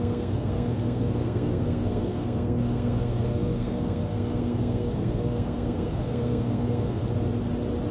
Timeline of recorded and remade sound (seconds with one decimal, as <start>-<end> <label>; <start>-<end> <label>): 0.0-7.0 remade; 7.0-7.9 recorded